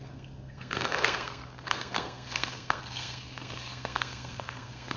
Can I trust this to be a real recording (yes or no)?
no